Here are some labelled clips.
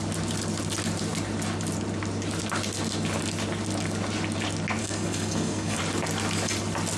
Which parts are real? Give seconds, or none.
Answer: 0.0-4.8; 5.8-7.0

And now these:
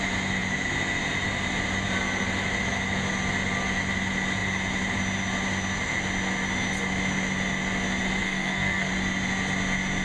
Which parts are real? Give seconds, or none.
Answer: 0.0-8.2; 8.9-10.0

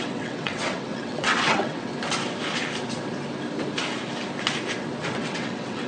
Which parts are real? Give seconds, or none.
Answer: 1.9-5.1

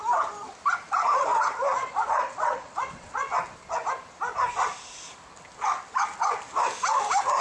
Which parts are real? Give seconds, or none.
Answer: 0.0-1.8; 3.3-7.4

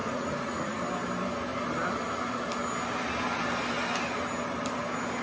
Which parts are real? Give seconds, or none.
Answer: 0.8-5.2